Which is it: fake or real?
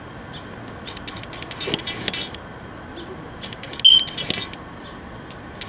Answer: real